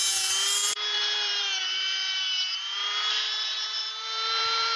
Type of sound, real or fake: fake